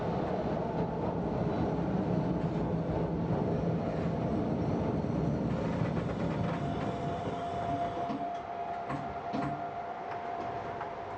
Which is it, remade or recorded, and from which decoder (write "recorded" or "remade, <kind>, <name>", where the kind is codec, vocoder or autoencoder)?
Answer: recorded